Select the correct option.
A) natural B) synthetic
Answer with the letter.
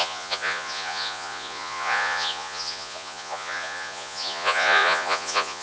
B